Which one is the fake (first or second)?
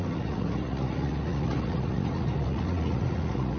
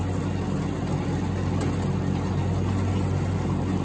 first